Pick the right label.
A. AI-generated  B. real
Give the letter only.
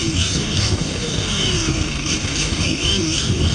A